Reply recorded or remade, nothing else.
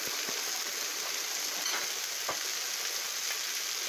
recorded